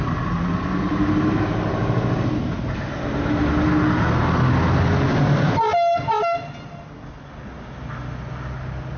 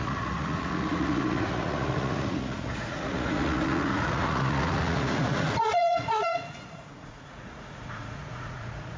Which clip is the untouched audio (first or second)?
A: first